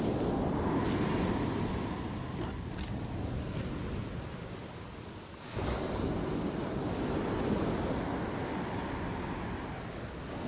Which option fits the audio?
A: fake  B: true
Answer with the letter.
B